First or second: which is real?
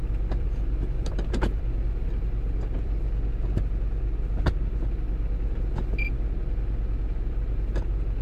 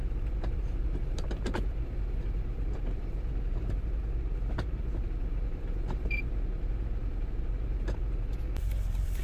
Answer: first